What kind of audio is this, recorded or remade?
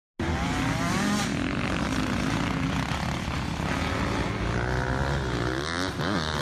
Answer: recorded